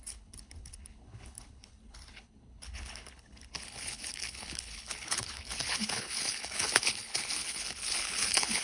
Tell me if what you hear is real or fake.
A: fake